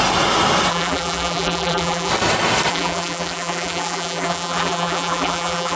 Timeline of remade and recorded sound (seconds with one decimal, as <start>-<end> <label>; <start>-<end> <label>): 0.0-0.7 recorded; 0.7-2.1 remade; 2.1-2.7 recorded; 2.7-5.8 remade